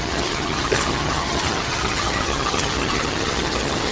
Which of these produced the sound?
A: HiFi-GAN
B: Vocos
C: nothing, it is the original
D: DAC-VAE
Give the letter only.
A